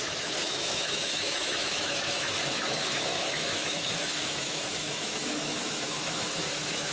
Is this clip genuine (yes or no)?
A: no